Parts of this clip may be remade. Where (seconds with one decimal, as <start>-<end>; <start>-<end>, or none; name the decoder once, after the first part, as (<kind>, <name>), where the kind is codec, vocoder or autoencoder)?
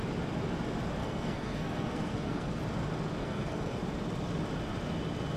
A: 1.0-2.6 (codec, SNAC); 3.2-3.8